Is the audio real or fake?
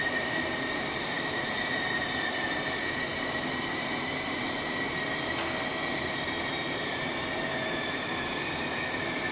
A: fake